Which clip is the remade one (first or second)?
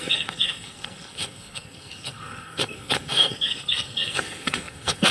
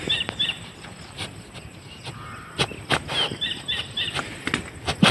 first